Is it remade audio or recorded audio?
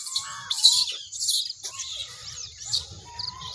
remade